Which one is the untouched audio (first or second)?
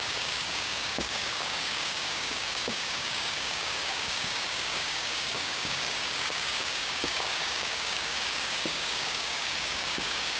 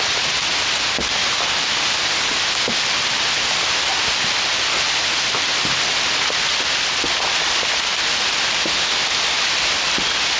second